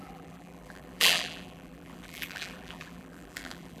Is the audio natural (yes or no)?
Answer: no